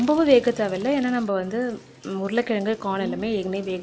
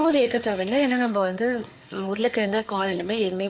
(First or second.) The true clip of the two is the first